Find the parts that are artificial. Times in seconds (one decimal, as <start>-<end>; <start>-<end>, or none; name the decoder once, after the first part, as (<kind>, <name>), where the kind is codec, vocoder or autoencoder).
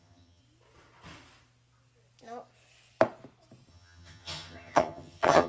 0.0-0.4 (vocoder, HiFi-GAN); 3.7-5.5